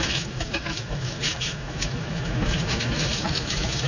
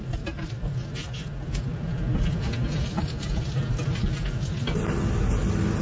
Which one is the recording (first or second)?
second